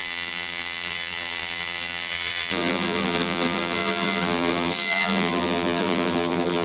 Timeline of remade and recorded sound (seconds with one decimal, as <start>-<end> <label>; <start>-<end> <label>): 0.0-6.6 remade